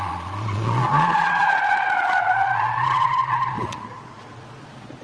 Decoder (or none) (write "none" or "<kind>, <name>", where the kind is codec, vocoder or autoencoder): vocoder, Vocos